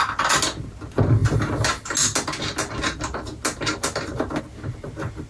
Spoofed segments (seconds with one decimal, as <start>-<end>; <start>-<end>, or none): none